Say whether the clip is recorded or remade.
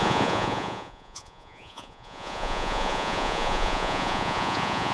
remade